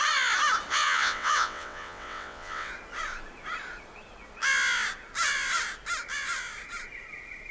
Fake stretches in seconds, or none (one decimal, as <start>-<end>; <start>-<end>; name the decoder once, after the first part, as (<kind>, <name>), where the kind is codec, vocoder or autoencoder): 0.7-2.7 (vocoder, WaveNeXt)